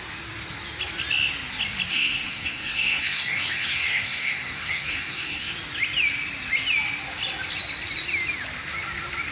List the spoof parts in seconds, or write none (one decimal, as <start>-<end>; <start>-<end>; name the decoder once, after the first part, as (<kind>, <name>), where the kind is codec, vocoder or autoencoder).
1.9-5.5 (codec, SNAC)